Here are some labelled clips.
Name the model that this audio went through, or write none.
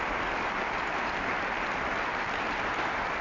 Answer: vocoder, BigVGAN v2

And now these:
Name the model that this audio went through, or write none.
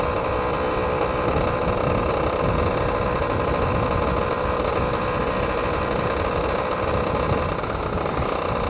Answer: none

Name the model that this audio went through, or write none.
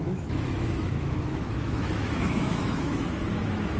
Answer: autoencoder, DAC-VAE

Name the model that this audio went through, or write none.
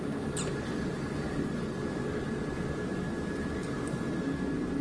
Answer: none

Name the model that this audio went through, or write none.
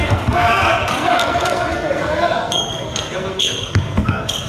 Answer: codec, SNAC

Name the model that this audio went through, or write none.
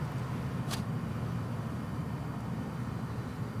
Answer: none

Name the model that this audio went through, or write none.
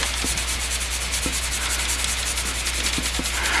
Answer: none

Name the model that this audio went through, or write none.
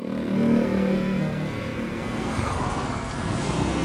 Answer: codec, SNAC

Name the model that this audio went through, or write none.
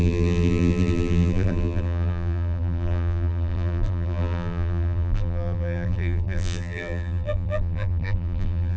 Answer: vocoder, BigVGAN v2